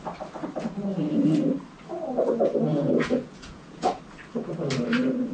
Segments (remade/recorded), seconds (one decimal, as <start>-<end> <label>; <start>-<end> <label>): 0.0-2.7 recorded; 2.7-4.0 remade; 4.0-5.3 recorded